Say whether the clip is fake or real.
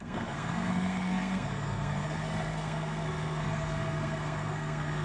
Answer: fake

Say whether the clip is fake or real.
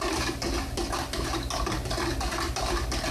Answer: real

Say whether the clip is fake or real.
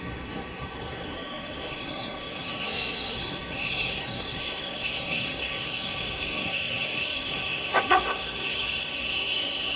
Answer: fake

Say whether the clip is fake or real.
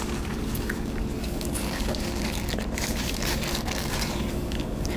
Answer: fake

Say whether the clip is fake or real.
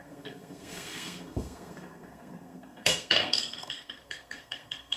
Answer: fake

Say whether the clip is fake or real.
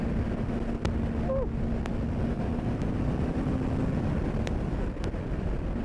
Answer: real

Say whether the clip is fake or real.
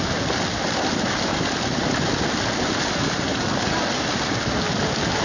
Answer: real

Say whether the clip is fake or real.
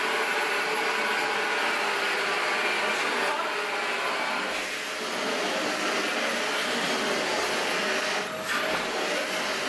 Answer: real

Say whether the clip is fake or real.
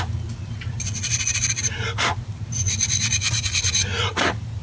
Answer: real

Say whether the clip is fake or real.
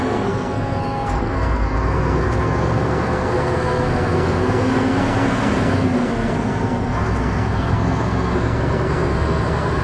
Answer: fake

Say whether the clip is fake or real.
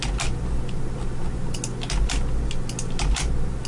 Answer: real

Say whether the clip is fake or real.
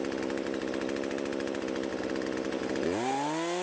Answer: real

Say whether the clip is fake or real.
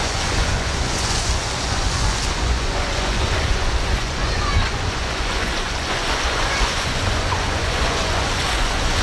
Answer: fake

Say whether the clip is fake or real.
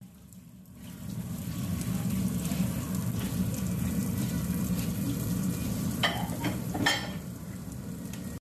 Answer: fake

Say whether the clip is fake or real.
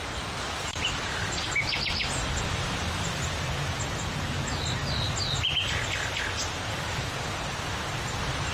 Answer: real